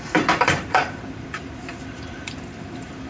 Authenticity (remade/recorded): remade